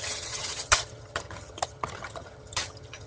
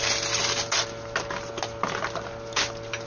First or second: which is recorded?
second